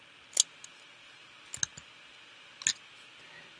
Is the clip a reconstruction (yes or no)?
no